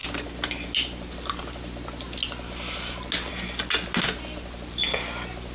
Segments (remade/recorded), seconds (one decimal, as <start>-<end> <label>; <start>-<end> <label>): 0.0-5.5 recorded